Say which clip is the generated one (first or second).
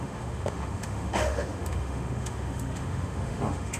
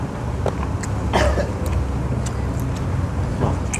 first